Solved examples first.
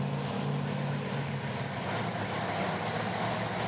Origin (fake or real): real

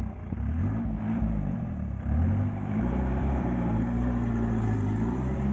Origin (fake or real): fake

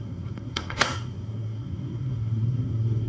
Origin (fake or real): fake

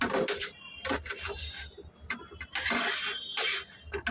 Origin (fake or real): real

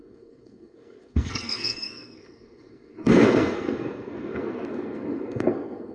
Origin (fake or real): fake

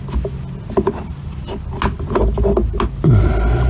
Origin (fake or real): real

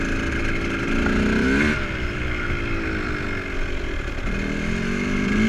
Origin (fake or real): real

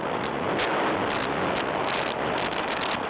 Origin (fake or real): real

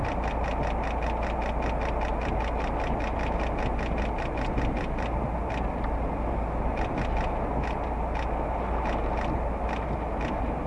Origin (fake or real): real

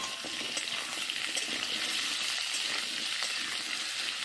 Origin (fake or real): real